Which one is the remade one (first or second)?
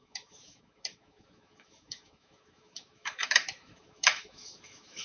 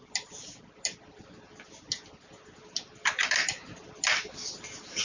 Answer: first